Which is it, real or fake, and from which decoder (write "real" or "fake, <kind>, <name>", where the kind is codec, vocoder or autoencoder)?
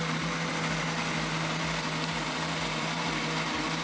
real